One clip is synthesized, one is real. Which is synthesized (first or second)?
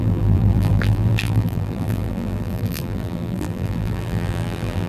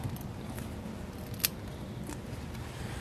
first